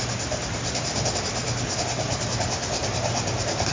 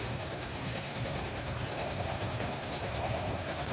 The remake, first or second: second